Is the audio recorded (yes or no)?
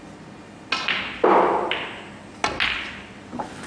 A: yes